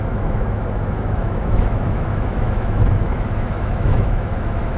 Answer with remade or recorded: remade